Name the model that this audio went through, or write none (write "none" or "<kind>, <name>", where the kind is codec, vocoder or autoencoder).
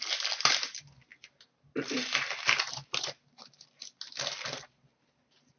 none